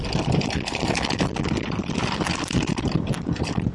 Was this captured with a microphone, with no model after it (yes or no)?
yes